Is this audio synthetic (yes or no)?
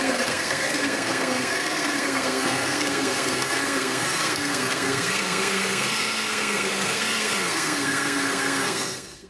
yes